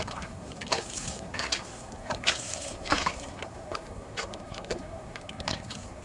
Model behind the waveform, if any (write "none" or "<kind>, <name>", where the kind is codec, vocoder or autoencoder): codec, SNAC